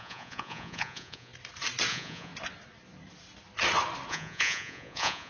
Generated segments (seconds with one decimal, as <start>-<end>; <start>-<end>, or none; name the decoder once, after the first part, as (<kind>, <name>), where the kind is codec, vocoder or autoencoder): 0.0-1.3 (vocoder, Vocos); 1.9-2.3; 4.1-5.3